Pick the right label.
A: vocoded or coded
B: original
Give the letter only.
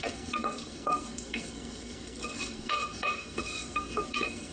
A